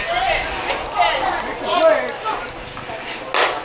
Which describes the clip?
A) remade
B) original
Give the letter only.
B